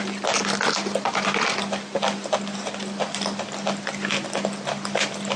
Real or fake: real